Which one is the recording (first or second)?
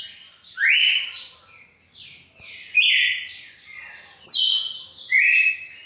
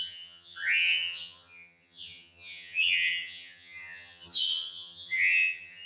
first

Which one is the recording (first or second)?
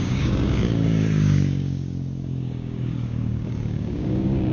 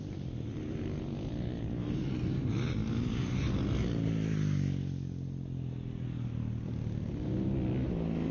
second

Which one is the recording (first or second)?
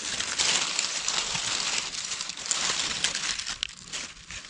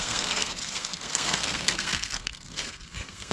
first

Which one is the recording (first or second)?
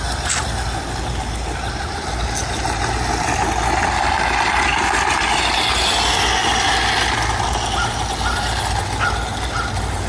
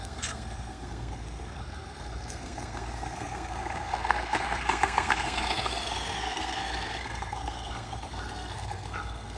first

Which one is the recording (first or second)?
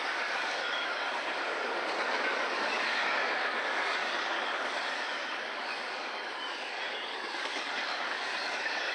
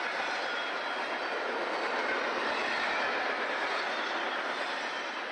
second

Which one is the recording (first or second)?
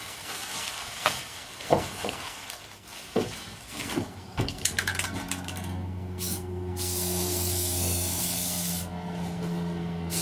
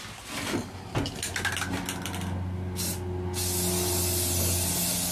second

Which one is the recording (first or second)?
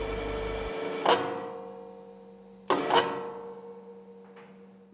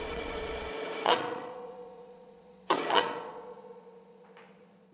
first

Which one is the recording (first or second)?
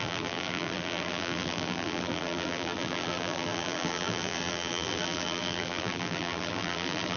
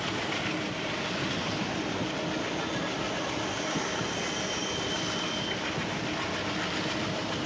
second